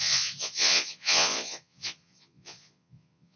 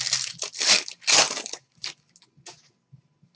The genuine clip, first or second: second